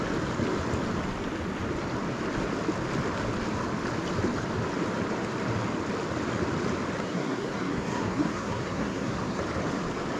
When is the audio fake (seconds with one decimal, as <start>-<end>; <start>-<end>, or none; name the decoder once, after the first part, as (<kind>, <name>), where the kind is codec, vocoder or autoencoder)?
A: 7.0-9.4 (codec, SNAC)